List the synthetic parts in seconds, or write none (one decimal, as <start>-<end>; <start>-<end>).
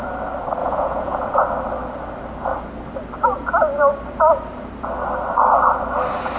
0.6-1.4